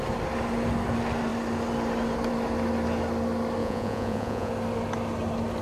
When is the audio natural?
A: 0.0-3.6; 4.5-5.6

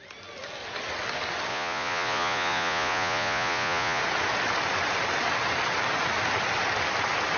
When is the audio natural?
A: 0.0-1.5; 4.0-7.4